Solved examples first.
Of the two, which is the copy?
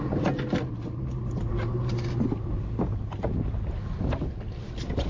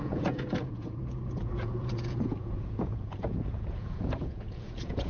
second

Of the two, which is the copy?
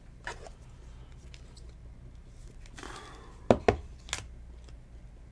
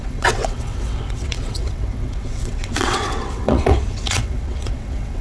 second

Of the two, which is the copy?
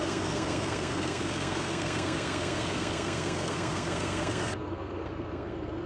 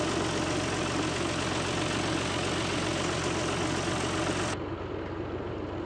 first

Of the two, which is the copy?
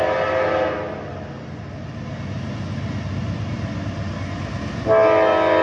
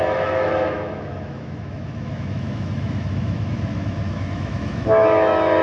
second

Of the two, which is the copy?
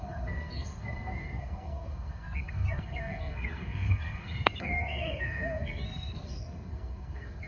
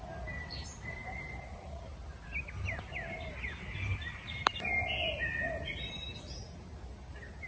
first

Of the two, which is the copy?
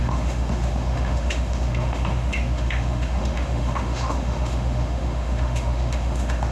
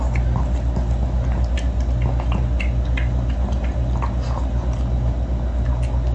first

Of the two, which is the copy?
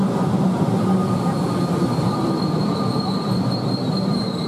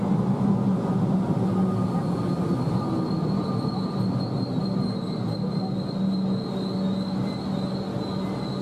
first